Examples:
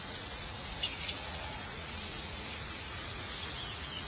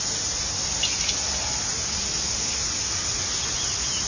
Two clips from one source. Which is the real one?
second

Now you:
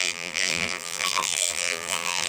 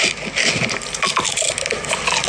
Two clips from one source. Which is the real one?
second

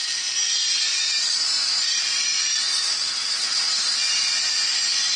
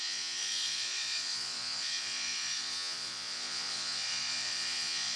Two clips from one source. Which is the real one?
first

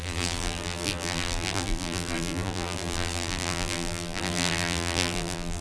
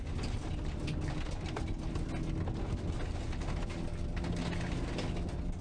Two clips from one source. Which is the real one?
second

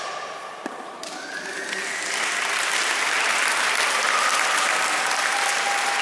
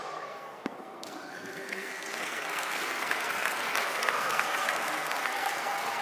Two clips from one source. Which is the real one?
first